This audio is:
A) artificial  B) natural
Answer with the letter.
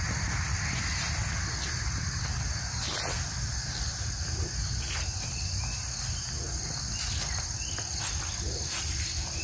B